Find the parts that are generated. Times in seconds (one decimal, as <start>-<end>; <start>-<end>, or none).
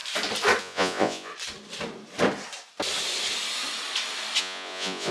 0.6-1.3; 4.4-5.1